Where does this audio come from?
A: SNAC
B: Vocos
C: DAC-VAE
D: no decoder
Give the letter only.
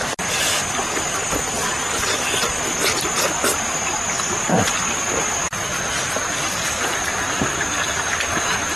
D